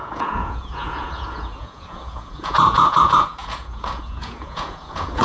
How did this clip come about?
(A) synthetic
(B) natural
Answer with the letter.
A